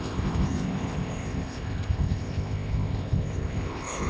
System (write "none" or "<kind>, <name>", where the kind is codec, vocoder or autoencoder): codec, ZipCodec